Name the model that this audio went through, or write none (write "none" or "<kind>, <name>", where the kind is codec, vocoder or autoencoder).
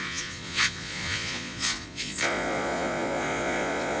vocoder, Vocos